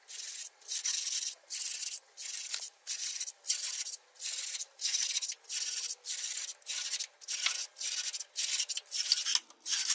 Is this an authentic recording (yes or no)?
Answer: yes